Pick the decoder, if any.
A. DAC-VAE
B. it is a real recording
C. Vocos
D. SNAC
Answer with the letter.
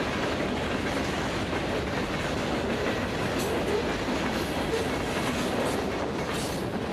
B